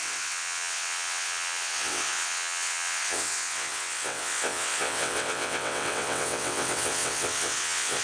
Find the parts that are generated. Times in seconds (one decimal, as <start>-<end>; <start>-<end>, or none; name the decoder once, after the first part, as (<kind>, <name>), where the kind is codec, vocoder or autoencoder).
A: 0.0-8.0 (vocoder, WaveNeXt)